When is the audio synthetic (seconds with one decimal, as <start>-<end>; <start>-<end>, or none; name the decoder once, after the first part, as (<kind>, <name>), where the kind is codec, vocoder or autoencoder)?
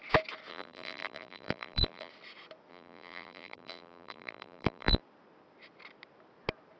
0.5-2.1 (vocoder, BigVGAN v2); 2.7-5.0